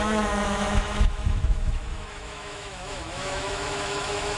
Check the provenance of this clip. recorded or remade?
remade